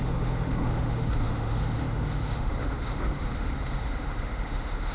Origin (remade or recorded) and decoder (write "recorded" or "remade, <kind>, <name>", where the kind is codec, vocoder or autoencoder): remade, autoencoder, DAC-VAE